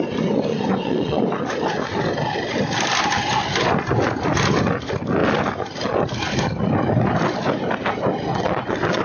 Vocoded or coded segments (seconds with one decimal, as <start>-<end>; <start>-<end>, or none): 0.5-1.2; 8.3-9.0